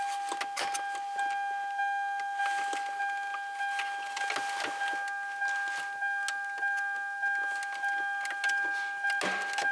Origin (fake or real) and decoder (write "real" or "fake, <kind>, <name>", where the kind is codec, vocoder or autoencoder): real